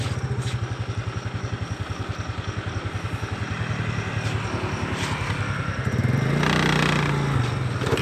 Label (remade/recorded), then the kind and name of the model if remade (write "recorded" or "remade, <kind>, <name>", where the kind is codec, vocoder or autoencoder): recorded